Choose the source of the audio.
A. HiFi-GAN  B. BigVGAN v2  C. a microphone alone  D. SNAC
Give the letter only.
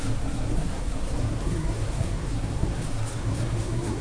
D